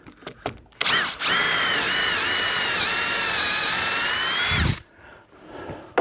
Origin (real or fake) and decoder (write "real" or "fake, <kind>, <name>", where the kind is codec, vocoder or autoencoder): real